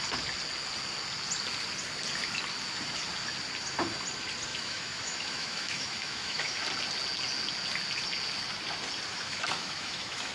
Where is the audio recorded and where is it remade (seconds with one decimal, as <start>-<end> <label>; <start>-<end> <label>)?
0.0-4.5 recorded; 4.5-6.6 remade; 6.6-9.1 recorded; 9.1-10.3 remade